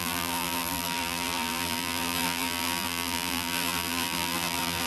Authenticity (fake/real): fake